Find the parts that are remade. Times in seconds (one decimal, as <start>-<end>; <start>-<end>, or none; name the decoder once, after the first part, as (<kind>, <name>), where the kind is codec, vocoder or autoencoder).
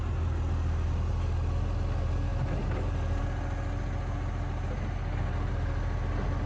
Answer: none